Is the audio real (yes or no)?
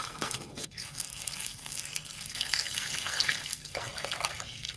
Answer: no